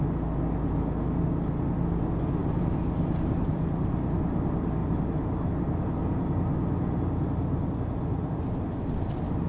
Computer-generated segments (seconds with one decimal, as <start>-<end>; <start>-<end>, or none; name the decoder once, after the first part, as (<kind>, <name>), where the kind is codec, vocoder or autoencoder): 2.4-3.9 (vocoder, BigVGAN v2); 4.8-5.5

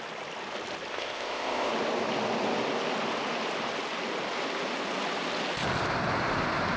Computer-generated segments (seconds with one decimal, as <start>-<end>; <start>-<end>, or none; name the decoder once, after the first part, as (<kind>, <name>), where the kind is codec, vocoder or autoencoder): 0.9-1.7 (codec, ZipCodec)